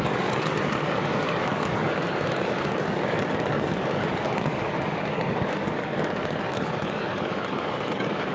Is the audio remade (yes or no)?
yes